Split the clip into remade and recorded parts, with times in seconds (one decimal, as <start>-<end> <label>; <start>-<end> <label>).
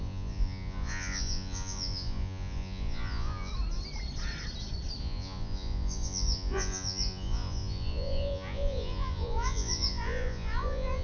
0.0-3.5 remade; 3.5-5.0 recorded; 5.0-11.0 remade